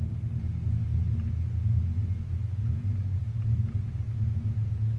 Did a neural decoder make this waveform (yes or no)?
no